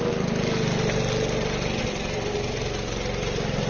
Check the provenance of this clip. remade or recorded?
recorded